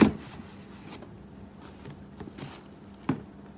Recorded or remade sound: recorded